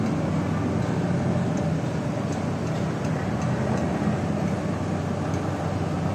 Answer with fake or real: real